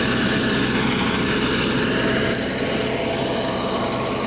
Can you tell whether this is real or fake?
real